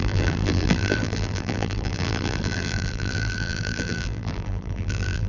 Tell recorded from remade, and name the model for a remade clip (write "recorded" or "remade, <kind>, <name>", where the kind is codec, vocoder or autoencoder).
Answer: remade, vocoder, BigVGAN v2